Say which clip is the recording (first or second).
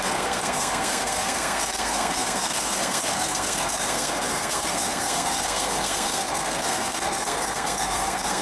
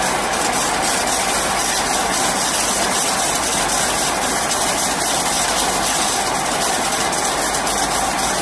second